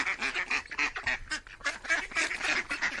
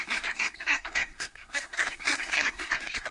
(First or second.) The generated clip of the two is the second